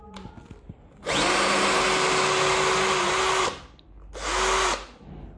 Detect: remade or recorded recorded